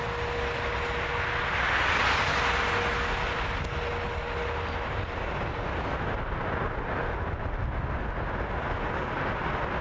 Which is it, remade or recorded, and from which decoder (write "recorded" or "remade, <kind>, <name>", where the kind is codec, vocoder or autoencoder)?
recorded